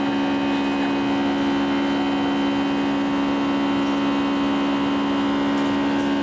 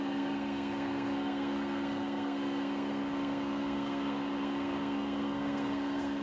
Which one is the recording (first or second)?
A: first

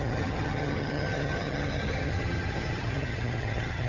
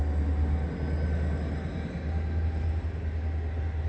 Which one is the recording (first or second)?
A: second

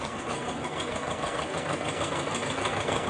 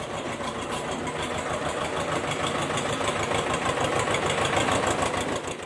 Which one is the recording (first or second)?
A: second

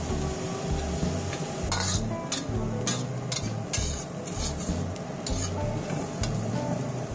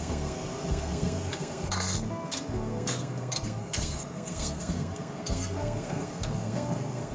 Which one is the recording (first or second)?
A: first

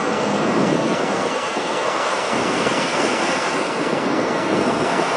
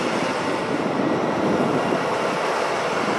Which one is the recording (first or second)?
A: second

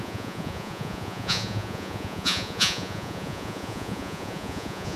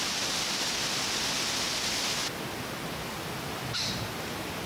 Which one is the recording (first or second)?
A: second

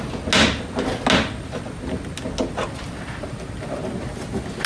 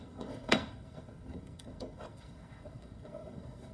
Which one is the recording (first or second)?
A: first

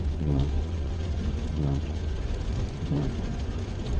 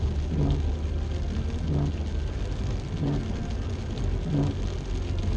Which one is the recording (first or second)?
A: second